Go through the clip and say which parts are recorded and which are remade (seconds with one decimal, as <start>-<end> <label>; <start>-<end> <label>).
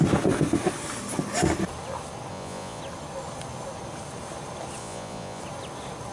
0.0-2.3 recorded; 2.3-2.8 remade; 2.8-4.8 recorded; 4.8-5.4 remade; 5.4-6.1 recorded